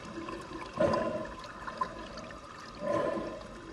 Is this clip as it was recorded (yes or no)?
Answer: yes